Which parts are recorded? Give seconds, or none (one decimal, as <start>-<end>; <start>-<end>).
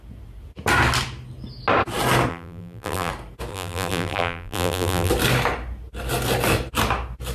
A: 0.0-2.3; 3.1-3.5; 5.1-7.3